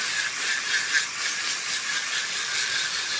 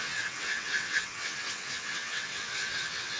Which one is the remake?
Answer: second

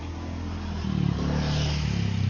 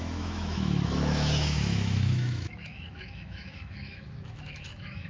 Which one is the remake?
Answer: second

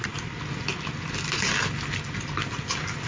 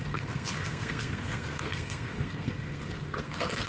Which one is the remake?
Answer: second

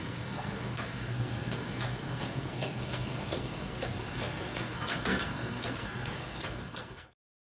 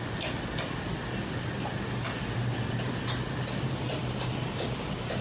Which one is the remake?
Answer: first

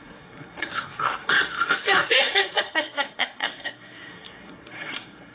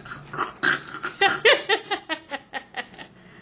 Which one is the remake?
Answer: first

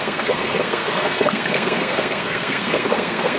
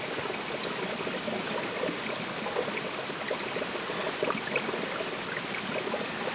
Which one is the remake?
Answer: first